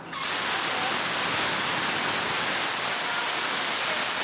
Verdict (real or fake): real